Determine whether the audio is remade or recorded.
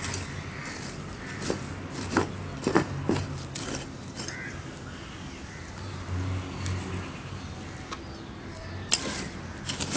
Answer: recorded